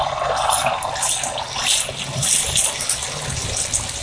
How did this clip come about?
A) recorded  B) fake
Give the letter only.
A